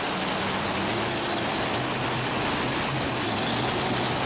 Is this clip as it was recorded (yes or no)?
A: yes